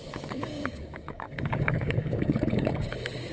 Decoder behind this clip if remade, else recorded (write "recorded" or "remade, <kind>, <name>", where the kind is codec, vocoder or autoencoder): remade, codec, DAC